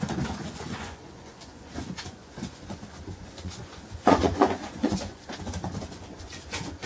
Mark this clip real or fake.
fake